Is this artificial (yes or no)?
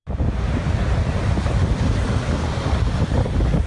no